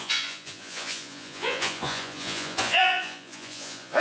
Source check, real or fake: fake